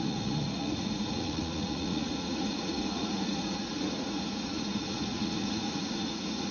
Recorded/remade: remade